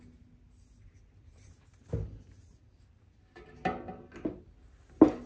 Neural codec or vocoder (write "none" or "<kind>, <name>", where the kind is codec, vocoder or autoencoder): none